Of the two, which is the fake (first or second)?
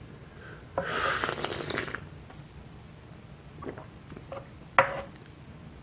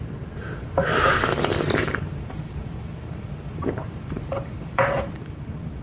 second